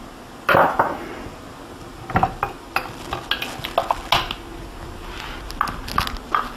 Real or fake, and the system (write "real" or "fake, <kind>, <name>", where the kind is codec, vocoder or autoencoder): real